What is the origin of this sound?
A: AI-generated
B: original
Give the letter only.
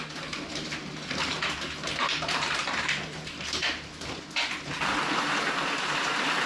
A